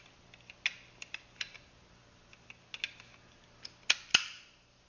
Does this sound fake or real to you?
real